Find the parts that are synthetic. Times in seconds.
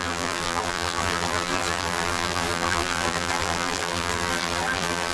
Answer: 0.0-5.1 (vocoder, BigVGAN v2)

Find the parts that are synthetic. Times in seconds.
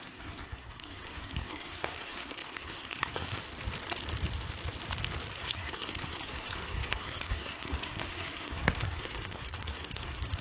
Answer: 0.0-3.4 (codec, SNAC); 5.3-10.4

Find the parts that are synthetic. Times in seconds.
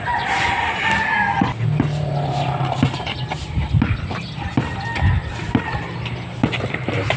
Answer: none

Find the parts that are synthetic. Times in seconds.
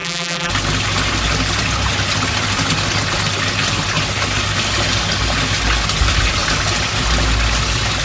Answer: 0.0-0.5 (vocoder, BigVGAN v2)